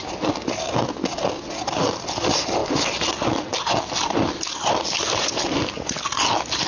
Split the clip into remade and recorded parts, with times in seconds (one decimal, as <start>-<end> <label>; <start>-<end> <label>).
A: 0.0-6.7 recorded